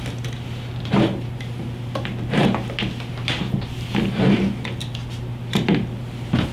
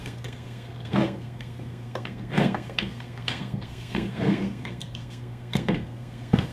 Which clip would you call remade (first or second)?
second